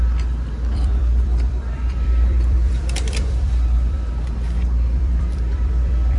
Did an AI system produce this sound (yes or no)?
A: yes